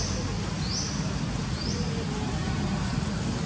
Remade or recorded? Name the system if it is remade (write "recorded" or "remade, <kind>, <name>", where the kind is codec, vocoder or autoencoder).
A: recorded